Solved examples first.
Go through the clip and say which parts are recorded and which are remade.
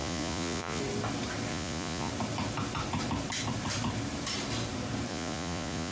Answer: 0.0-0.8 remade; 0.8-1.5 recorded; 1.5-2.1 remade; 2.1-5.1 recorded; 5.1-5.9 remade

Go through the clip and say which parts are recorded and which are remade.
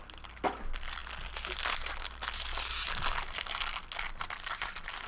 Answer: 0.0-5.1 recorded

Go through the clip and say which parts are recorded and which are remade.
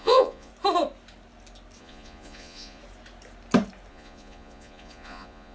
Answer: 0.0-0.5 remade; 0.5-1.8 recorded; 1.8-2.8 remade; 2.8-3.9 recorded; 3.9-5.5 remade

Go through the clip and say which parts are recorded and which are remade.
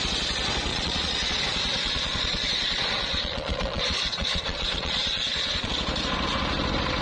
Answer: 0.0-0.7 recorded; 0.7-1.4 remade; 1.4-1.8 recorded; 1.8-5.7 remade; 5.7-7.0 recorded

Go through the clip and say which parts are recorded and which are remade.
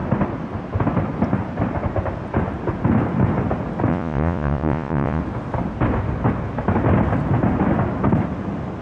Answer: 0.0-3.9 recorded; 3.9-5.2 remade; 5.2-8.8 recorded